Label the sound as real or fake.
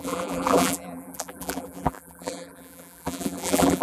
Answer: fake